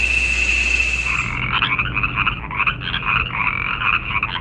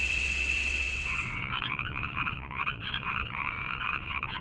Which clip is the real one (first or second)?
first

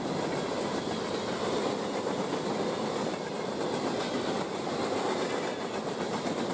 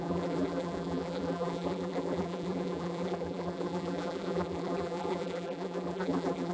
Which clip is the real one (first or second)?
first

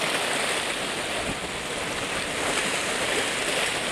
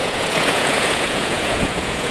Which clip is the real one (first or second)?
first